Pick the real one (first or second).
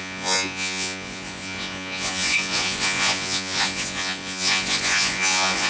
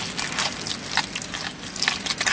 second